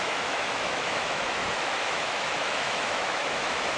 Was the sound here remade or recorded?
remade